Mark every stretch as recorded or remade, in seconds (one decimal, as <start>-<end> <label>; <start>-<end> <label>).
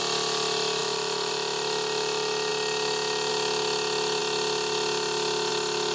0.0-0.8 recorded; 0.8-1.3 remade; 1.3-5.9 recorded